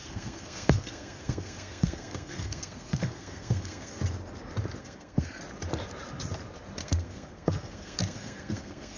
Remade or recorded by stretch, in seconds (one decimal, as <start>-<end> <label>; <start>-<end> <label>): 0.0-4.0 remade; 4.0-4.8 recorded; 4.8-5.4 remade; 5.4-6.8 recorded; 6.8-9.0 remade